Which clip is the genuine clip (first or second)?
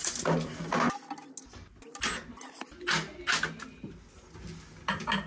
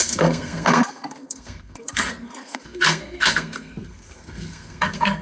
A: first